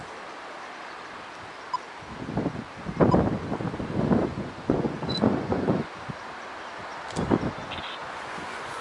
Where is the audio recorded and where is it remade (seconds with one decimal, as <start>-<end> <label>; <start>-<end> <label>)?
0.0-4.3 recorded; 4.3-5.9 remade; 5.9-8.0 recorded; 8.0-8.8 remade